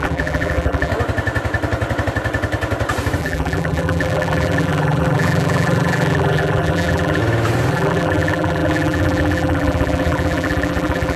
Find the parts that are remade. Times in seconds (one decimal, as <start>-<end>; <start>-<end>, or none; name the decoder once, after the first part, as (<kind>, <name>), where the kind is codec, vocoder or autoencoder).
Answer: 0.0-0.9 (vocoder, BigVGAN v2); 3.2-7.2; 7.7-11.2